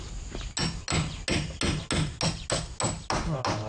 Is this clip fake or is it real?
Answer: real